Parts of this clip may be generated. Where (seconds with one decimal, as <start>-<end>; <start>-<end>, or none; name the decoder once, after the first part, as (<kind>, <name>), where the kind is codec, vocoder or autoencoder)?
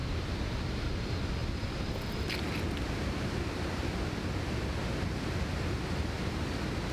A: 0.0-0.7 (vocoder, BigVGAN v2)